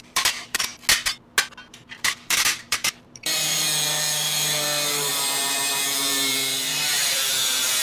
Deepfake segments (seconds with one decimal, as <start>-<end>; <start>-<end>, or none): 0.0-0.7; 1.9-7.8